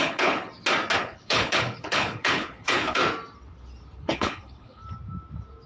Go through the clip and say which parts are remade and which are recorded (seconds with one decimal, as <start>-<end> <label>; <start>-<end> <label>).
0.0-0.5 remade; 0.5-1.0 recorded; 1.0-3.0 remade; 3.0-4.0 recorded; 4.0-4.8 remade; 4.8-5.7 recorded